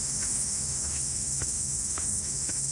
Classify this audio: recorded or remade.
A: remade